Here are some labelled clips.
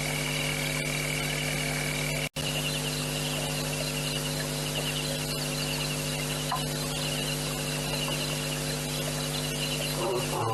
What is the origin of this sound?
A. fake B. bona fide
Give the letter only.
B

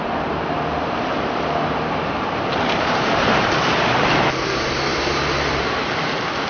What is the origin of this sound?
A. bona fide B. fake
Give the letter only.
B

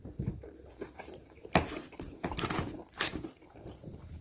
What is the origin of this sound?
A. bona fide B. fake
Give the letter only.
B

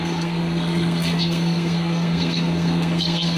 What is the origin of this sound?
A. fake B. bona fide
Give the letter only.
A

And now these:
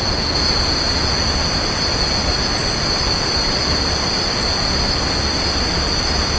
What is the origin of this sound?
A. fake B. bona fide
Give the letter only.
B